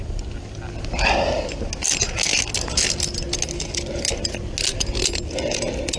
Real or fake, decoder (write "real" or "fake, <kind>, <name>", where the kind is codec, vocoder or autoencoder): real